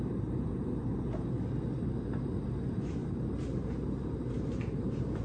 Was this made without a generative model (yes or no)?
no